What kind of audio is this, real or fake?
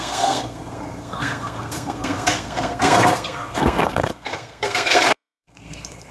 fake